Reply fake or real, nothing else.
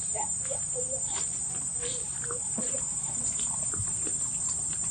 real